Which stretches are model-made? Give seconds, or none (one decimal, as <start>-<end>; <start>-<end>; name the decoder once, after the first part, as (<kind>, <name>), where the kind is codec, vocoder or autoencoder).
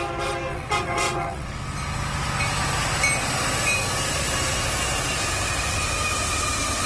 0.5-1.6 (vocoder, WaveNeXt)